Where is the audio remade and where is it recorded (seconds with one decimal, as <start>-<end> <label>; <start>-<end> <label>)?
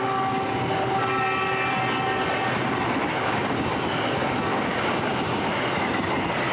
0.0-3.1 recorded; 3.1-3.7 remade; 3.7-4.5 recorded; 4.5-5.6 remade; 5.6-6.5 recorded